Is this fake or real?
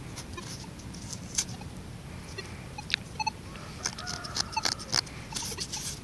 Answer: real